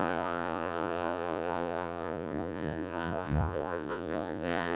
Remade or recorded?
remade